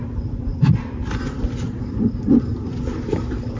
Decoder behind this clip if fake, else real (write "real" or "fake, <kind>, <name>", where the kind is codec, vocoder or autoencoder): real